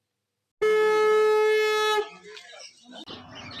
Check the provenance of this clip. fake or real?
real